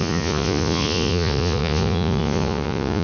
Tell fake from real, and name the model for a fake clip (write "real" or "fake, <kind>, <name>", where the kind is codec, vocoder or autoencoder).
fake, vocoder, Vocos